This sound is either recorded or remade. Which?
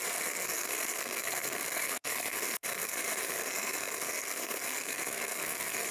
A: remade